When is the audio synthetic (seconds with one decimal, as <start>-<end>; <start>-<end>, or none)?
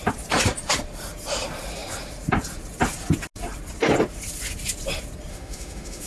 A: 5.3-6.1